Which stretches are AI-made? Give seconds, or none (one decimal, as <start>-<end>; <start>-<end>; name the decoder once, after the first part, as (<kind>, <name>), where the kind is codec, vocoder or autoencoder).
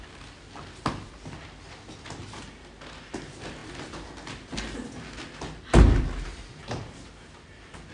none